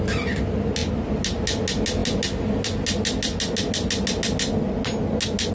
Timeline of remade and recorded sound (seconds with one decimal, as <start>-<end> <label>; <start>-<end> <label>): 0.0-5.5 recorded